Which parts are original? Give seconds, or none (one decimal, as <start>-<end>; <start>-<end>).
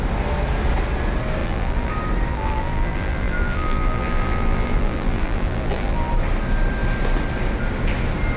0.0-1.4; 1.9-2.3; 6.1-8.4